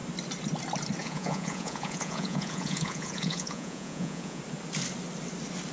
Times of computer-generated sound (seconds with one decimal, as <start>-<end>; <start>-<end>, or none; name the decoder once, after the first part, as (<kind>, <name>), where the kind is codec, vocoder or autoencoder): 1.0-4.4 (vocoder, Vocos)